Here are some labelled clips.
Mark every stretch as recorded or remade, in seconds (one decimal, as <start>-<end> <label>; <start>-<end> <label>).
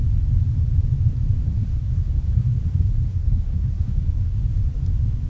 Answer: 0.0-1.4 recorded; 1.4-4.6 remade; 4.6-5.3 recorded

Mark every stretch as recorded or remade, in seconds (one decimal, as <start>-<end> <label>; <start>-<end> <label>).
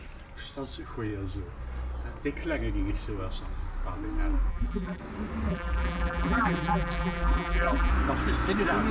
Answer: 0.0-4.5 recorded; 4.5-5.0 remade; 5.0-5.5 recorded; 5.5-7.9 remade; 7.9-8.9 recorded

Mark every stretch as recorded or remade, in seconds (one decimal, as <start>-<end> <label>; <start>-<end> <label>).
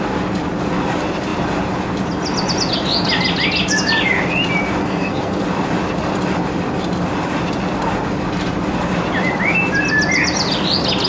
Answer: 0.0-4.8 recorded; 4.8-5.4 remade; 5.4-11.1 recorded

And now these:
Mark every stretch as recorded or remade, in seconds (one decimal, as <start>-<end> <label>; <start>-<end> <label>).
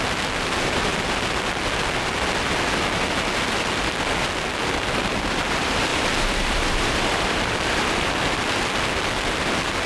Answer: 0.0-5.9 recorded; 5.9-8.1 remade; 8.1-9.9 recorded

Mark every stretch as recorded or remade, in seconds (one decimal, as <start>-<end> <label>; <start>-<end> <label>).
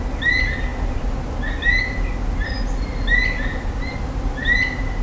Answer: 0.0-5.0 recorded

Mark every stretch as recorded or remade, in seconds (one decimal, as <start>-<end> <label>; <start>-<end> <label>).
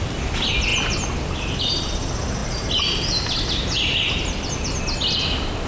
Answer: 0.0-5.7 recorded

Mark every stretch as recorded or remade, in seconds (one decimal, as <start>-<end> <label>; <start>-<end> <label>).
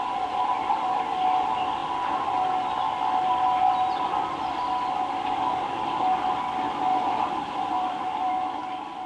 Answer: 0.0-6.9 recorded; 6.9-8.3 remade; 8.3-9.1 recorded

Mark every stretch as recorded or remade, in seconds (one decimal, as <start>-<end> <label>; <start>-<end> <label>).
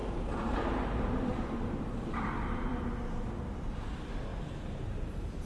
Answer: 0.0-3.3 remade; 3.3-4.3 recorded; 4.3-5.5 remade